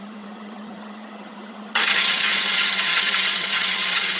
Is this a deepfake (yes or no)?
yes